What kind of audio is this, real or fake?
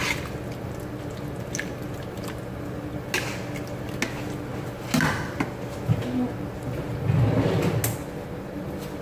real